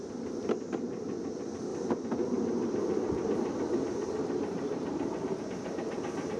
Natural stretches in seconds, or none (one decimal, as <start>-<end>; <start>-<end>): 0.0-6.4